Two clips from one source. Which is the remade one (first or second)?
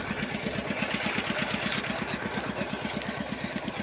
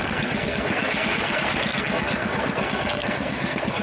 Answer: second